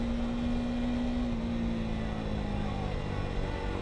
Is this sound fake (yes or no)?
no